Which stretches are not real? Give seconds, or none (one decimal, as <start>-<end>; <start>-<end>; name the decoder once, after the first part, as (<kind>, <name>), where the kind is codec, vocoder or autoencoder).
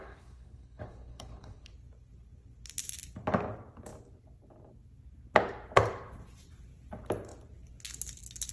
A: 0.0-1.7 (codec, HILCodec)